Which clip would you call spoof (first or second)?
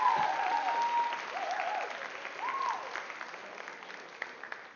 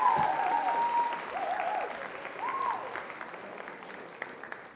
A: second